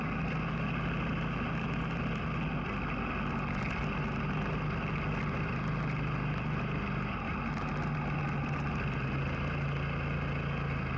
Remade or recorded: recorded